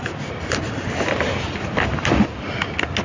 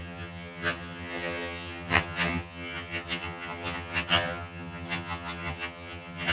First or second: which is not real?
second